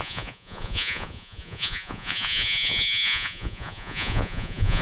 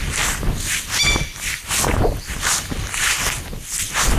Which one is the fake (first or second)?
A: first